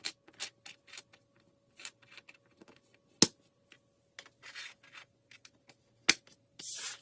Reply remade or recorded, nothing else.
recorded